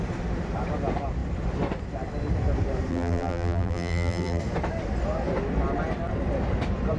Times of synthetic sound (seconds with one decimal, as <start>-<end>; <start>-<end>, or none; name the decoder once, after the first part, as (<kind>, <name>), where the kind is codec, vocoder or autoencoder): 2.9-4.4 (vocoder, BigVGAN v2)